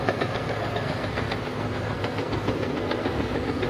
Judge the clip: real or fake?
fake